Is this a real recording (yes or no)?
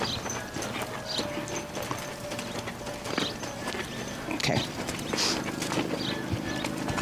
yes